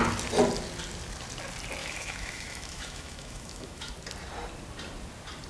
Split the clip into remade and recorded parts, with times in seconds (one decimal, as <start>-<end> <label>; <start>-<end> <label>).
0.0-1.8 recorded; 1.8-3.9 remade; 3.9-5.5 recorded